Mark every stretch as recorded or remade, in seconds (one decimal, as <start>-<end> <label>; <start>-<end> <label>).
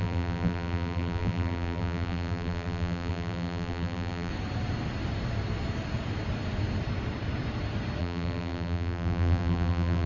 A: 0.0-4.3 remade; 4.3-8.0 recorded; 8.0-10.1 remade